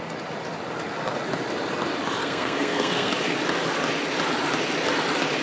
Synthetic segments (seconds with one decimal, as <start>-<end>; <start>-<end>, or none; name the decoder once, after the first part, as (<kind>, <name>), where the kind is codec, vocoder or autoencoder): 2.2-3.1 (codec, SNAC)